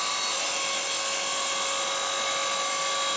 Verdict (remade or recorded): recorded